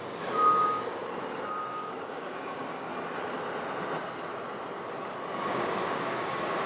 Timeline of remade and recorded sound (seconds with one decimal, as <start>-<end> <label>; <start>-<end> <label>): 0.0-1.0 remade; 1.0-1.6 recorded; 1.6-2.9 remade; 2.9-5.5 recorded; 5.5-6.7 remade